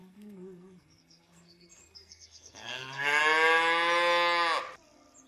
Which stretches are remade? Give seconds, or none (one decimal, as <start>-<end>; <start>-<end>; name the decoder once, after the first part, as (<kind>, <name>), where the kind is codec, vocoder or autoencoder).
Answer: 0.0-3.2 (codec, SNAC)